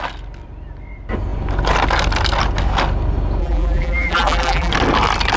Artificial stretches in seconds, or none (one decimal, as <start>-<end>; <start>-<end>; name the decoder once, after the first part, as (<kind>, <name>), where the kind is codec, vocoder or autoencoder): 3.4-4.7 (vocoder, BigVGAN v2)